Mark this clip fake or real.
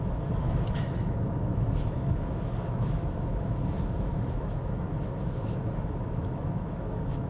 fake